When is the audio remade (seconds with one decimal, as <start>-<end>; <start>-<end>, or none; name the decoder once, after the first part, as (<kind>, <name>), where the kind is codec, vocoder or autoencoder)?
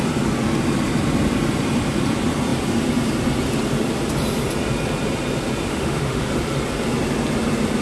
5.7-6.3 (autoencoder, DAC-VAE)